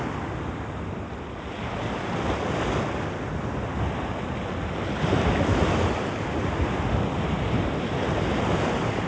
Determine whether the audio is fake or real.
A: real